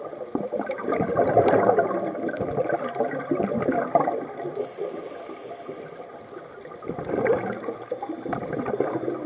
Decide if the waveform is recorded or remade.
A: remade